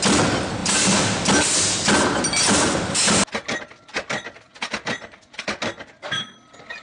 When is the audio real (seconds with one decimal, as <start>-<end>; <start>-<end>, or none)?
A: 0.0-6.8